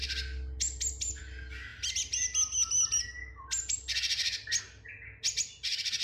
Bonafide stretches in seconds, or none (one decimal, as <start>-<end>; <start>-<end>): 0.0-6.0